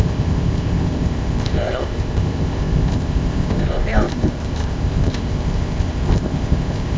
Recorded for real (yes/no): no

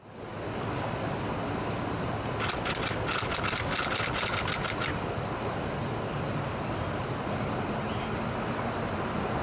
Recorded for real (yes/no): yes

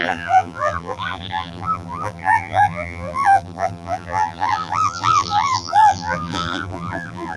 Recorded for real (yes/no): no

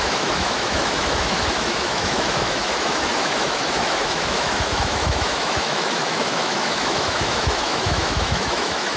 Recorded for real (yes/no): no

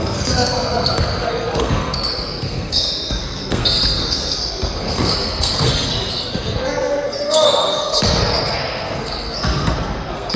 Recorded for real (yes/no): no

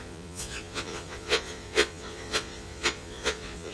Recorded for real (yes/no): no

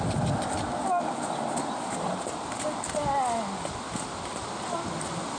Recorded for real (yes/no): yes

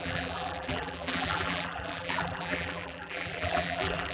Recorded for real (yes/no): no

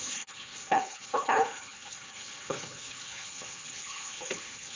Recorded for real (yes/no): no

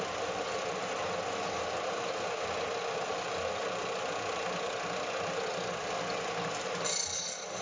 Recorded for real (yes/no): yes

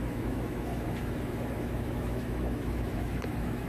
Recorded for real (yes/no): no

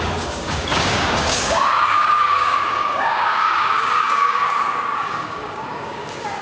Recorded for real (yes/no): no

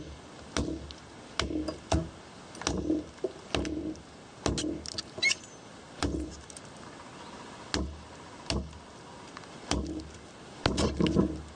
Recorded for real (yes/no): yes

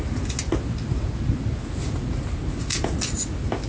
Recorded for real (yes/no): yes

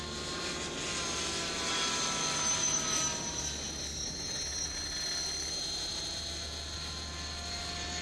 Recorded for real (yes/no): yes